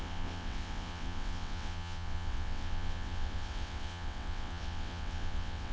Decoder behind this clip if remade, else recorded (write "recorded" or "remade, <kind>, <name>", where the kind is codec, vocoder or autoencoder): remade, vocoder, WaveNeXt